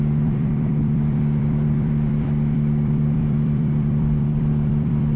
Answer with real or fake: fake